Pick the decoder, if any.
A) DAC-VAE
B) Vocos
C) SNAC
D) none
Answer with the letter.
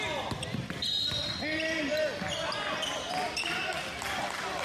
D